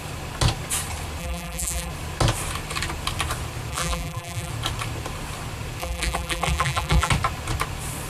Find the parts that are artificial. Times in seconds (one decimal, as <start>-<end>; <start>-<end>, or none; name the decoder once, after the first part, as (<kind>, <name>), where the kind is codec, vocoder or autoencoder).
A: 1.2-1.9 (vocoder, BigVGAN v2); 3.7-4.5; 5.8-7.1